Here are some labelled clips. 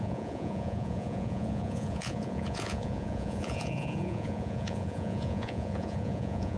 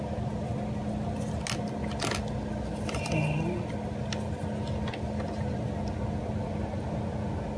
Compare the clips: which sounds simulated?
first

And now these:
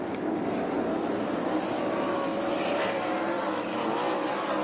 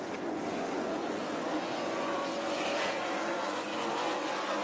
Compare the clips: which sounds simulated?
second